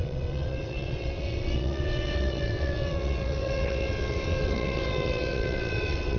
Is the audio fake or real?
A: fake